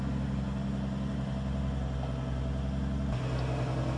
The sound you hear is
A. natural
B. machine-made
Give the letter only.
A